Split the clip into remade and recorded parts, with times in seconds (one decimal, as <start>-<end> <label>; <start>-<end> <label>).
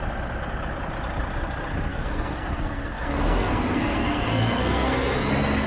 0.0-1.9 recorded; 1.9-5.3 remade; 5.3-5.7 recorded